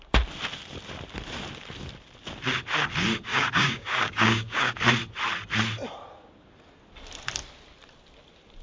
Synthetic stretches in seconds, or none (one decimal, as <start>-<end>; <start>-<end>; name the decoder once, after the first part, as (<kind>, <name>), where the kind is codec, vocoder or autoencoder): 3.3-4.7 (codec, DAC)